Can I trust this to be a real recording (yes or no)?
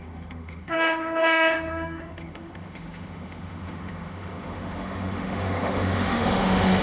no